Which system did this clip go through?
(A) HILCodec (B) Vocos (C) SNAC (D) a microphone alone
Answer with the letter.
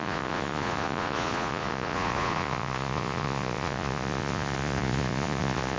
B